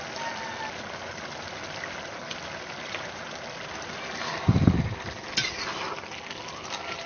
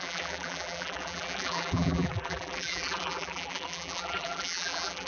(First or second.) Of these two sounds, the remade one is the second